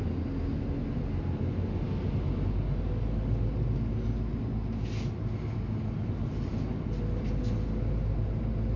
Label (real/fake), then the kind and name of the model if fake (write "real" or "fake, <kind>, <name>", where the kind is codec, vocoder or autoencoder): real